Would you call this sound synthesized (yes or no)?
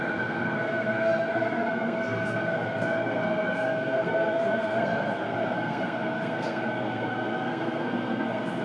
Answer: yes